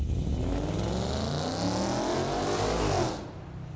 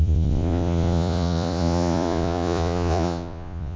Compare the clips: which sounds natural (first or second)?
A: first